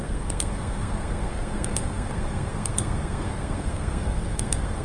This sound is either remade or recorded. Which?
remade